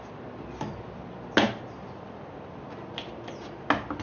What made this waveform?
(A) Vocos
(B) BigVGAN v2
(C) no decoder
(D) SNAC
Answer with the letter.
C